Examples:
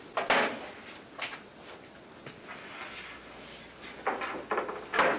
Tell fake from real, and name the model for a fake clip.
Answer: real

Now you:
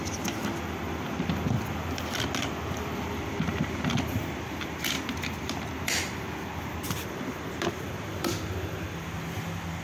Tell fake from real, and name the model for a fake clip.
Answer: real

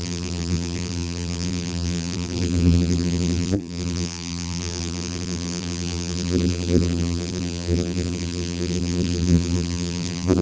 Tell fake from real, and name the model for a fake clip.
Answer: fake, vocoder, BigVGAN v2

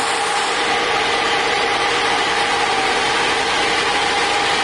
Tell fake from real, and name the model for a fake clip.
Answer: fake, vocoder, BigVGAN v2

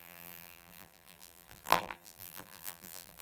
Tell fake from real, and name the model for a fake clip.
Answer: fake, vocoder, BigVGAN v2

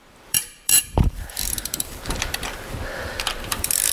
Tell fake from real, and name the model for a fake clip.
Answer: fake, vocoder, BigVGAN v2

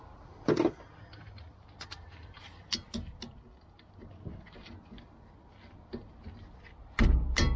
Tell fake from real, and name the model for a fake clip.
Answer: real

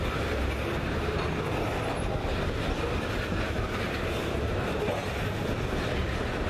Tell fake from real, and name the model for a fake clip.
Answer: real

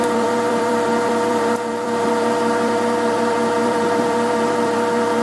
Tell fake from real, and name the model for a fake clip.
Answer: fake, vocoder, BigVGAN v2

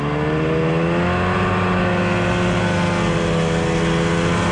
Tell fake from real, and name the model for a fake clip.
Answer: real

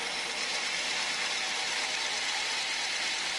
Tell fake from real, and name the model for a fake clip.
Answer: real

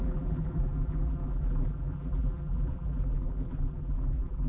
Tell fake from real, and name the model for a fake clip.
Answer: fake, vocoder, BigVGAN v2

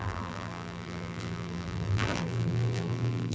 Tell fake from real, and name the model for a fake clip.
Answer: fake, vocoder, BigVGAN v2